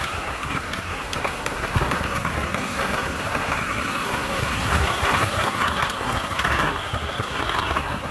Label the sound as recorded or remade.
remade